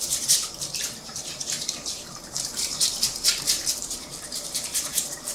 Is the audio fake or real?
fake